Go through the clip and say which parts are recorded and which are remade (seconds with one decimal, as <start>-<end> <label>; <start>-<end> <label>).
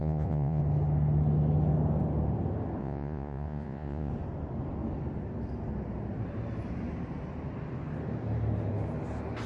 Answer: 0.0-0.6 remade; 0.6-2.8 recorded; 2.8-4.1 remade; 4.1-9.5 recorded